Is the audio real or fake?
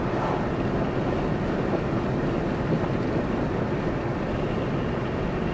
real